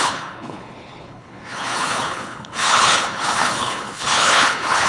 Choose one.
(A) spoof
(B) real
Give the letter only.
A